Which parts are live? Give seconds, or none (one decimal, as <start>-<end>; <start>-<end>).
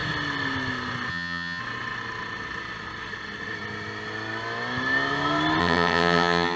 0.0-1.1; 1.6-5.6